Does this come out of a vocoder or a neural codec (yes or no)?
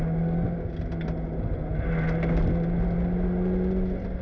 no